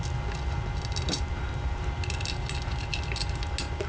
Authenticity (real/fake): real